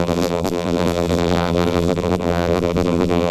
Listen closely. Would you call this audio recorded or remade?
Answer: remade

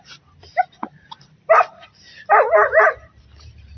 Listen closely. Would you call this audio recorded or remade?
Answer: recorded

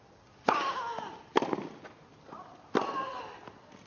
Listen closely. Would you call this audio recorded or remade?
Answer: recorded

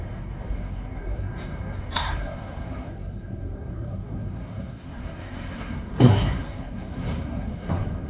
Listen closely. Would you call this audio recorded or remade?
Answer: remade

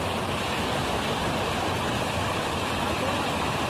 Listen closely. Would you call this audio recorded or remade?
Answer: recorded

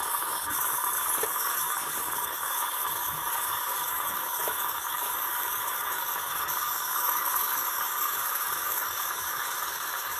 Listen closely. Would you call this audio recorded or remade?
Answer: remade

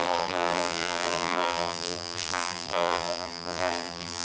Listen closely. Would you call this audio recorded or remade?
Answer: remade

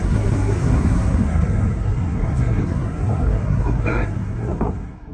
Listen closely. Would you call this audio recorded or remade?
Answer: remade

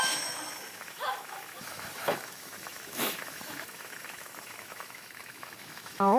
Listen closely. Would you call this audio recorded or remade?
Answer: remade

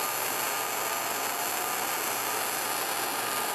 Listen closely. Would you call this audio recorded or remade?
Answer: recorded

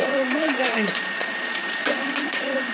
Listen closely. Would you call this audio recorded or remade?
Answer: remade